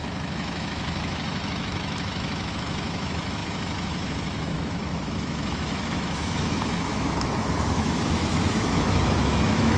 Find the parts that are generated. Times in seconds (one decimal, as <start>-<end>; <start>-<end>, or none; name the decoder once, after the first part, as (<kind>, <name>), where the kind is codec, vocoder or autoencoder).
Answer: 0.0-9.8 (autoencoder, DAC-VAE)